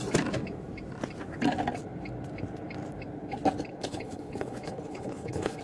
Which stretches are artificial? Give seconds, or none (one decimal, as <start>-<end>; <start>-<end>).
3.7-5.6